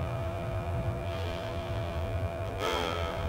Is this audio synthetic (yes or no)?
yes